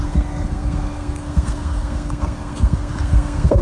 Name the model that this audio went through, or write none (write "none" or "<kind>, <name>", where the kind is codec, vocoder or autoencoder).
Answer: codec, SNAC